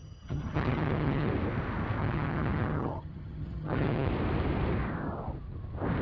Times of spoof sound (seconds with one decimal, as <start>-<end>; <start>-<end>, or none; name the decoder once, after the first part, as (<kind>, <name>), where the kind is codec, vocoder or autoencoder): 0.0-1.3 (vocoder, HiFi-GAN); 2.0-4.1